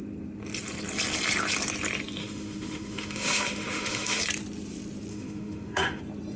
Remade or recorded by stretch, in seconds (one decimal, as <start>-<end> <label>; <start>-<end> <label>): 0.0-2.2 recorded; 2.2-4.2 remade; 4.2-5.1 recorded; 5.1-6.0 remade; 6.0-6.4 recorded